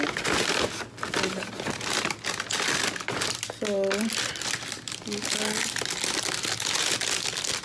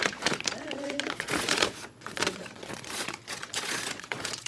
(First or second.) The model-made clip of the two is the second